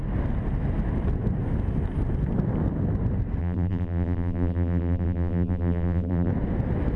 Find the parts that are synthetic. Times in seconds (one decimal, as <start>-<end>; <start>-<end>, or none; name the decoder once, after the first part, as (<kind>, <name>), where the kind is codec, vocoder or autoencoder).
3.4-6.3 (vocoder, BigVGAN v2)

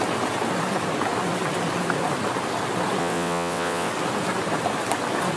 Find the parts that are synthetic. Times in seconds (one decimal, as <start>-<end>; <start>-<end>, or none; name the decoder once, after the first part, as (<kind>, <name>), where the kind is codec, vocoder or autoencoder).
3.0-3.9 (vocoder, WaveNeXt)

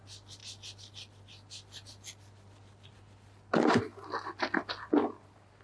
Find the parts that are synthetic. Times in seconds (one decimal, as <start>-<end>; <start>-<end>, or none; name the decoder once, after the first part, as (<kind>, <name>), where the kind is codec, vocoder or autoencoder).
none

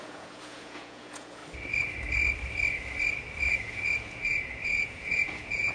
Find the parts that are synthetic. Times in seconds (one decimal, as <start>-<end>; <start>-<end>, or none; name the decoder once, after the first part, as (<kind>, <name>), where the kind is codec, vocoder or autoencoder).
0.0-1.4 (vocoder, Vocos); 3.5-5.7

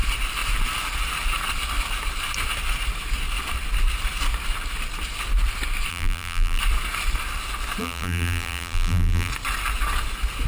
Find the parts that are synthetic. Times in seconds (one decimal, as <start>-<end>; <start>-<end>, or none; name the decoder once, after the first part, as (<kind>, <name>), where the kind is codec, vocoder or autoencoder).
5.9-6.6 (vocoder, BigVGAN v2); 7.8-9.3

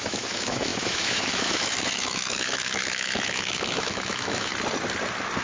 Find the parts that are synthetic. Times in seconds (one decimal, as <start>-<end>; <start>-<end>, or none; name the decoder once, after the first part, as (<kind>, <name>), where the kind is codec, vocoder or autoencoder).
0.0-4.5 (autoencoder, DAC-VAE)